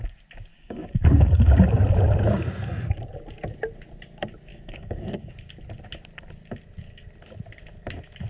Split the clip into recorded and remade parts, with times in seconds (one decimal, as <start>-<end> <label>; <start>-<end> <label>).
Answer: 0.0-0.5 recorded; 0.5-1.7 remade; 1.7-4.5 recorded; 4.5-5.3 remade; 5.3-8.3 recorded